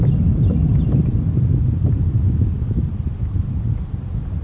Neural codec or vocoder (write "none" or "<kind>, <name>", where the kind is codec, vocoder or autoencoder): none